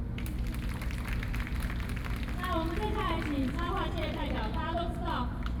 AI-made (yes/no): no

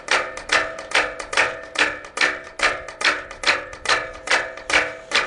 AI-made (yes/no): no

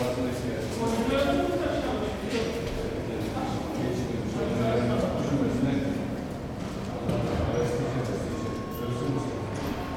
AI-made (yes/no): no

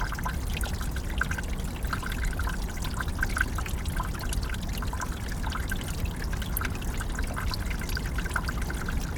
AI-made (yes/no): no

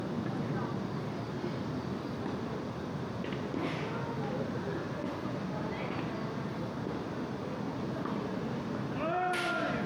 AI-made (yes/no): no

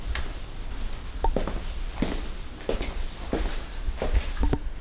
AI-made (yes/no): no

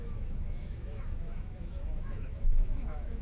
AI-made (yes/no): yes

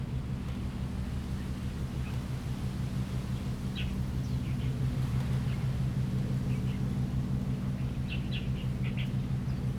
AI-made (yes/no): no